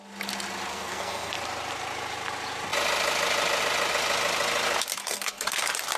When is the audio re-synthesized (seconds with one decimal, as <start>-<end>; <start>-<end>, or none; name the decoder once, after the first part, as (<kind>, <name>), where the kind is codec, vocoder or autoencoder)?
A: 0.7-1.3 (codec, SNAC); 5.0-5.6